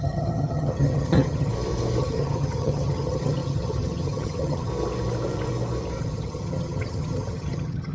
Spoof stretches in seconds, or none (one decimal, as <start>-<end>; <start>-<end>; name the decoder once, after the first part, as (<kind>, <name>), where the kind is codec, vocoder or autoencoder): 0.0-1.5 (vocoder, HiFi-GAN); 2.0-4.7; 6.0-7.9